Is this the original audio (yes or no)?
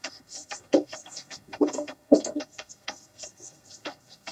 no